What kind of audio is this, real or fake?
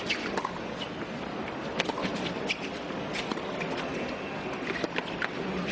real